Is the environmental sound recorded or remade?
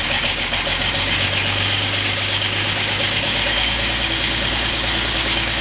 remade